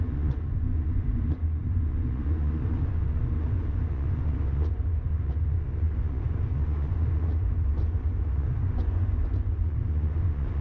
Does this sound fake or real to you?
fake